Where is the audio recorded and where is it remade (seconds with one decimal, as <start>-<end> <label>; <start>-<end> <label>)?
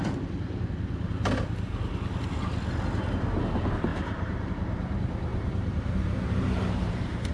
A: 0.0-3.9 recorded; 3.9-4.5 remade; 4.5-5.3 recorded; 5.3-7.3 remade